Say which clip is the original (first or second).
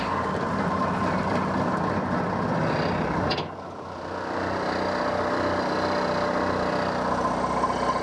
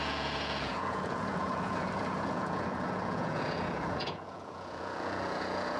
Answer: first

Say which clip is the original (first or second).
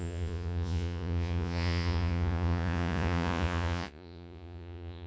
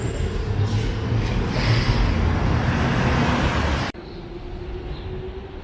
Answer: second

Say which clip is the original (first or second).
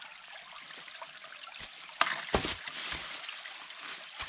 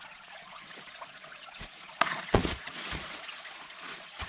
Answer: first